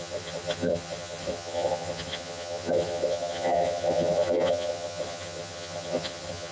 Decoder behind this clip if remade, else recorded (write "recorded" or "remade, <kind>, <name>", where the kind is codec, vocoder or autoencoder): remade, vocoder, HiFi-GAN